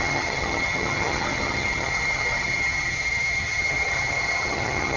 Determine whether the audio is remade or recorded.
remade